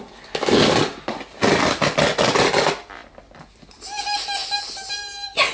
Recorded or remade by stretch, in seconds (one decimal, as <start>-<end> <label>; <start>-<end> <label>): 0.0-5.5 recorded